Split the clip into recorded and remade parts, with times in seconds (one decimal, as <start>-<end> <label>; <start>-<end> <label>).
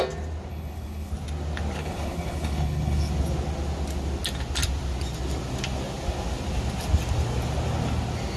0.0-0.5 recorded; 0.5-1.1 remade; 1.1-1.8 recorded; 1.8-3.1 remade; 3.1-8.4 recorded